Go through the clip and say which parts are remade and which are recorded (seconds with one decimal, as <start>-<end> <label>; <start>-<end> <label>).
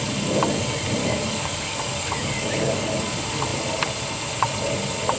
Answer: 0.0-1.0 recorded; 1.0-3.0 remade; 3.0-5.2 recorded